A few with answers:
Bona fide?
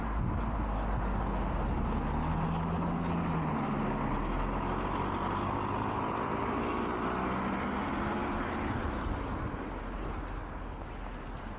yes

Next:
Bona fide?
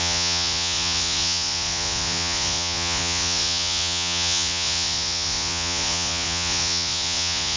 no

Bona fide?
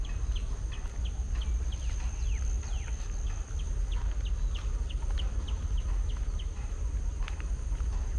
yes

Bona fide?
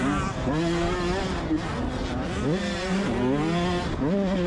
yes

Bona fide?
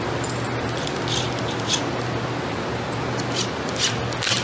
yes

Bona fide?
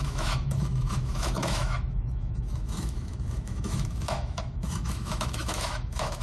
no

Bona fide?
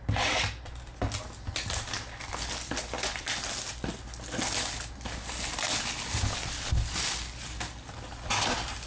yes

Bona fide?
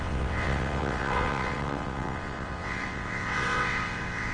no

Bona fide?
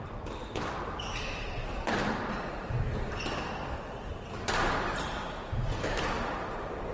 no